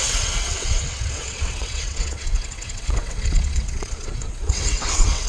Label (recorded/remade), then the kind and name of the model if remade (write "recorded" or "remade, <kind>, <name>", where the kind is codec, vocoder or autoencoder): remade, vocoder, WaveNeXt